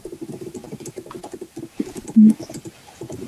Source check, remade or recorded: recorded